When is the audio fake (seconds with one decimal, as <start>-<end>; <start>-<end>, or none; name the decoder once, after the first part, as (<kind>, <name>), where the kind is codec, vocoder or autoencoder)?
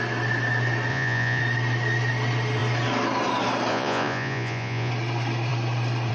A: 0.9-1.4 (vocoder, Vocos); 3.7-4.9